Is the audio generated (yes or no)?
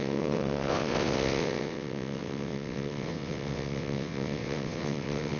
yes